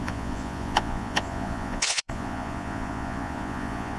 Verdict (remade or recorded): remade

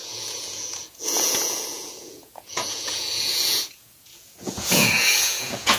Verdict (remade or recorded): remade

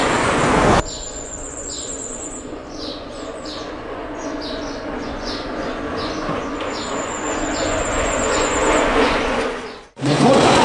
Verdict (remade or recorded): remade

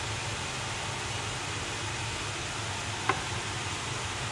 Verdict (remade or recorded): recorded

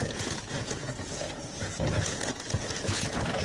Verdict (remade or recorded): remade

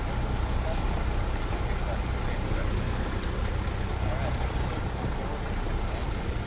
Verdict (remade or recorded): recorded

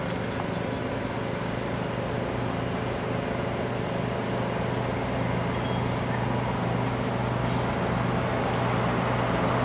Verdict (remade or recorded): recorded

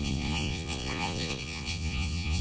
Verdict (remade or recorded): remade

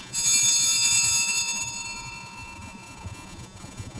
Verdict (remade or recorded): remade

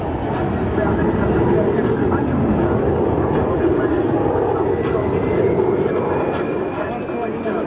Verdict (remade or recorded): recorded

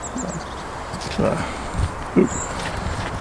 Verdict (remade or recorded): recorded